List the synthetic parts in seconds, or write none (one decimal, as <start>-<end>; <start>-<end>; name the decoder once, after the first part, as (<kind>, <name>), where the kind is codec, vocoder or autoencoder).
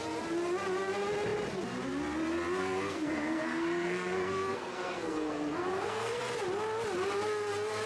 2.6-6.2 (codec, SNAC)